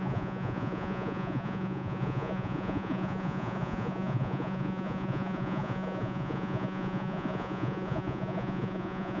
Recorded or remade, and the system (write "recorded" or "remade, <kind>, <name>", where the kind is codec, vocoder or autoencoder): remade, vocoder, Vocos